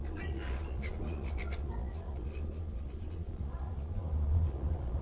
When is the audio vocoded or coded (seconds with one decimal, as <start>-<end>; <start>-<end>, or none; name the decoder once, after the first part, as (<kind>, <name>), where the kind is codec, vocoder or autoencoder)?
0.0-5.0 (vocoder, Vocos)